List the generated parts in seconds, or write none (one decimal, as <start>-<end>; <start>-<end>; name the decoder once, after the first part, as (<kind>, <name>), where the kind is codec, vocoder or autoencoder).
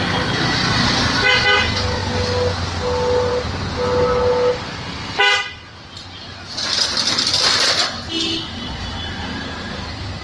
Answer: none